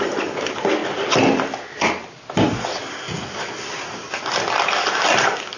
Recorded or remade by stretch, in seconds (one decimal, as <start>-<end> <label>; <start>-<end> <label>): 0.0-5.6 recorded